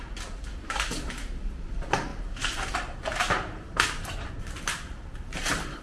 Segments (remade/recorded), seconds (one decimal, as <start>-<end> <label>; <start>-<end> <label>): 0.0-5.8 remade